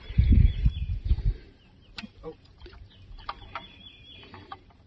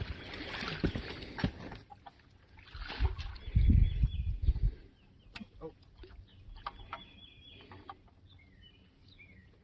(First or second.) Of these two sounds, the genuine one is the second